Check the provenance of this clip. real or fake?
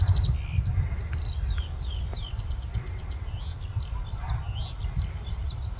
real